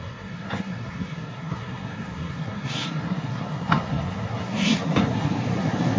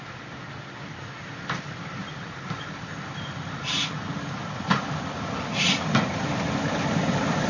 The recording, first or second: second